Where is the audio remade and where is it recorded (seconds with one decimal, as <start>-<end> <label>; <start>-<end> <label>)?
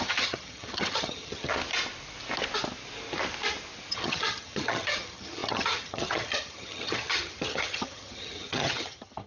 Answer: 0.0-1.5 remade; 1.5-3.9 recorded; 3.9-9.3 remade